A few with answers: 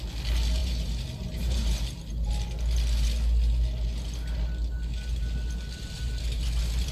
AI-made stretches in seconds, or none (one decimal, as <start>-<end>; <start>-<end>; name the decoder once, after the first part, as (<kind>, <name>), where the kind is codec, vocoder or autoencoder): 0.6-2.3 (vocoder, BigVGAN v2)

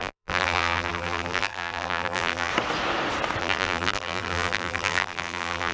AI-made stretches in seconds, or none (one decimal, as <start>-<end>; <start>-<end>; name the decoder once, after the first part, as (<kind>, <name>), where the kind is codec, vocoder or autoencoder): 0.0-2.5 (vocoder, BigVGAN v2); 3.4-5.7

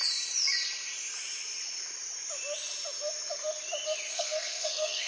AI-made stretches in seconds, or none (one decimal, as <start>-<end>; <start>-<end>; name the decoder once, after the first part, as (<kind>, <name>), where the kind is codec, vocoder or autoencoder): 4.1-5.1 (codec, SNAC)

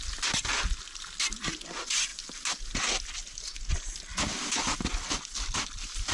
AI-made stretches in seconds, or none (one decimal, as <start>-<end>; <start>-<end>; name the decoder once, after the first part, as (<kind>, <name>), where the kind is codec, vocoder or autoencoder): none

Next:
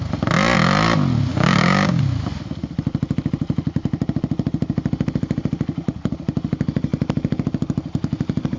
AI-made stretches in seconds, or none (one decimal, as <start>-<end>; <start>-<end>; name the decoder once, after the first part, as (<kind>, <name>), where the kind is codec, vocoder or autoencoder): 1.3-2.0 (codec, DAC)

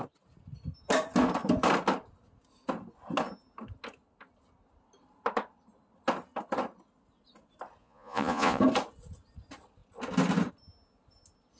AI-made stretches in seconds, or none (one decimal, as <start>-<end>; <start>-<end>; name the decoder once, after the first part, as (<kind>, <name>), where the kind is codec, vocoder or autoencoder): 7.8-8.6 (vocoder, Vocos)